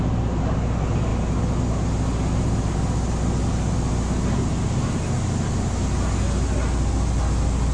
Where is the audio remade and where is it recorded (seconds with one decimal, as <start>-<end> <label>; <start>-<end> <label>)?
0.0-7.7 recorded